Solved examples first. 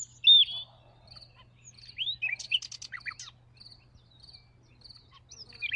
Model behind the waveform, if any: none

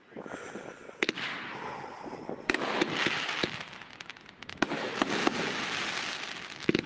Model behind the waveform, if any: none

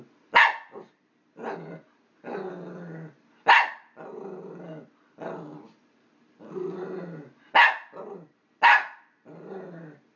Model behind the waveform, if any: none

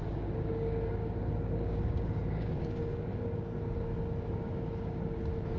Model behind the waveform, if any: codec, DAC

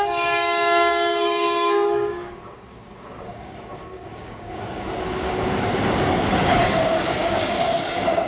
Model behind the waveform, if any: codec, DAC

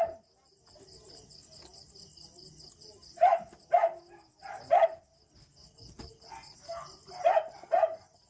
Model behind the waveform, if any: none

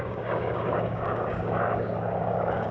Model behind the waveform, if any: codec, DAC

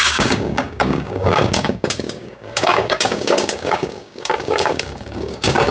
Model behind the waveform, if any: codec, DAC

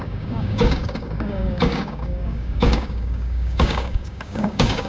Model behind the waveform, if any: codec, DAC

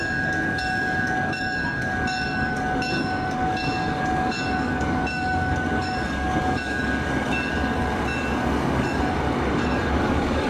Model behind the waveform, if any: codec, DAC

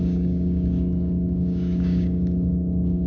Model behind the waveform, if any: codec, DAC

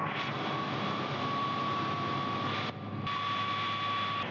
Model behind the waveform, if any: none